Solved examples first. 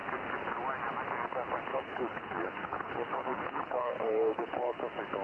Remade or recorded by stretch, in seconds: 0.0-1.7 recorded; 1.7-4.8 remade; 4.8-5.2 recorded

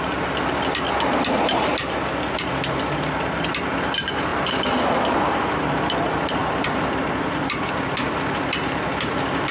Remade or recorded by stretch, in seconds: 0.0-9.5 recorded

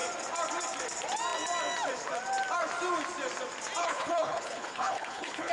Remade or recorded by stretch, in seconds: 0.0-3.8 recorded; 3.8-5.5 remade

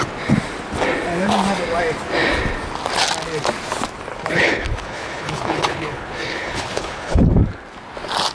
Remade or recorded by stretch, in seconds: 0.0-4.1 recorded; 4.1-7.2 remade; 7.2-8.3 recorded

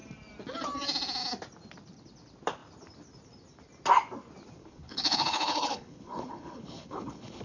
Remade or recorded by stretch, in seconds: 0.0-4.6 recorded; 4.6-7.4 remade

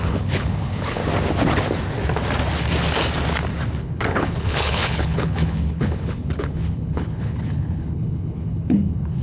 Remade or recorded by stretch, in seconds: 0.0-1.0 remade; 1.0-3.8 recorded; 3.8-9.2 remade